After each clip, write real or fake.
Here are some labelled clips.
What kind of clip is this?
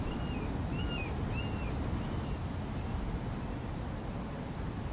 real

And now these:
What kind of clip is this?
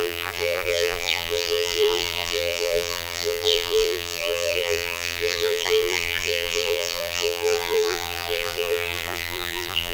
fake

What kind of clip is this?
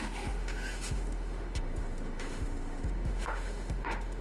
fake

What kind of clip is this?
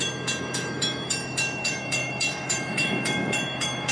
fake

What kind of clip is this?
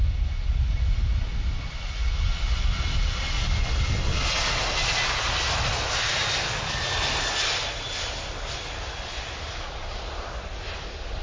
real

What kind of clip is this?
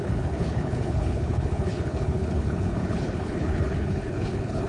fake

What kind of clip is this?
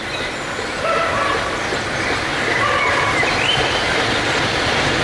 real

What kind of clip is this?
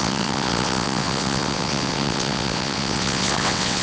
fake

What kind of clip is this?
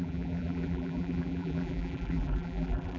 fake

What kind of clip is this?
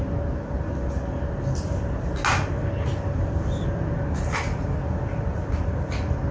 real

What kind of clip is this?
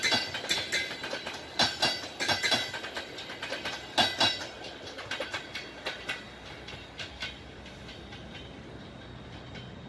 real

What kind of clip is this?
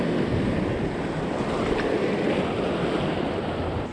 real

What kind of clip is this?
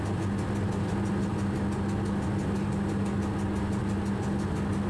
real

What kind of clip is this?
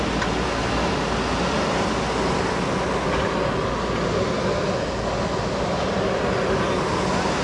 real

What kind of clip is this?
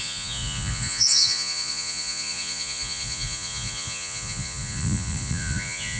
fake